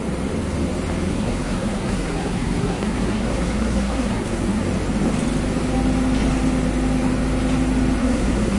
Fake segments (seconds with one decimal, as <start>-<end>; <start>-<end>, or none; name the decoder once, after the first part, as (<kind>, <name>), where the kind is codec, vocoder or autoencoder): 1.1-4.6 (codec, SNAC); 8.0-8.6